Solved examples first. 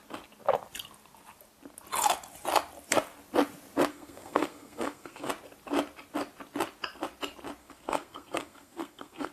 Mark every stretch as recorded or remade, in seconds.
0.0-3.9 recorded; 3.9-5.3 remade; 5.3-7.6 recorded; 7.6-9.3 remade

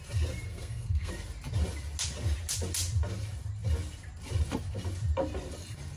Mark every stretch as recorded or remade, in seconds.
0.0-0.5 recorded; 0.5-1.1 remade; 1.1-6.0 recorded

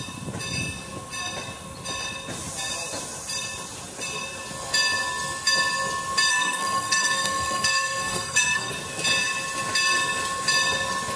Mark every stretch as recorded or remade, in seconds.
0.0-6.3 recorded; 6.3-8.7 remade; 8.7-11.2 recorded

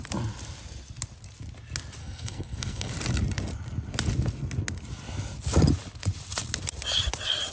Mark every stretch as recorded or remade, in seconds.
0.0-2.0 recorded; 2.0-2.9 remade; 2.9-7.5 recorded

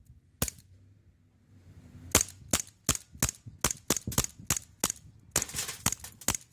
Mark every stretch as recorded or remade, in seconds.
0.0-6.5 recorded

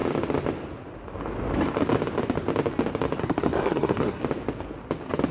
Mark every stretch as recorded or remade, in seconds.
0.0-3.2 recorded; 3.2-4.2 remade; 4.2-5.3 recorded

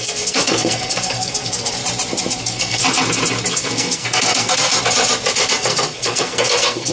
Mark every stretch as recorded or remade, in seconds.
0.0-1.8 remade; 1.8-2.4 recorded; 2.4-2.8 remade; 2.8-3.5 recorded; 3.5-4.7 remade; 4.7-5.5 recorded; 5.5-6.9 remade